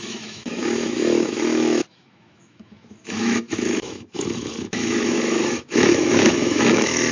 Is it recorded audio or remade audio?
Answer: remade